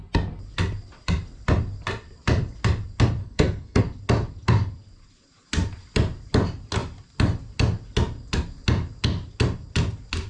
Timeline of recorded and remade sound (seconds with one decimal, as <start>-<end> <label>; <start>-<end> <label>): 0.0-3.2 recorded; 3.2-3.8 remade; 3.8-10.3 recorded